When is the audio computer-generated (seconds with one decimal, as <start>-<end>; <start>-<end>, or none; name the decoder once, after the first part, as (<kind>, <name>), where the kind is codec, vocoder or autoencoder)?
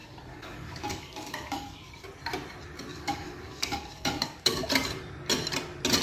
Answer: 0.0-1.9 (codec, DAC); 2.9-4.7